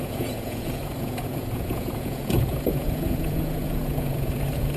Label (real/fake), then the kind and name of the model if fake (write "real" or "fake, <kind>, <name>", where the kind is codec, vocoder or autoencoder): fake, vocoder, Vocos